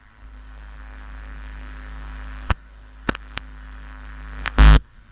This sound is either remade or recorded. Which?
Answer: remade